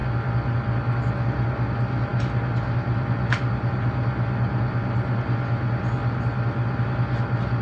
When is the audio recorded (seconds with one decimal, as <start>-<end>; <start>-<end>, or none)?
0.0-7.6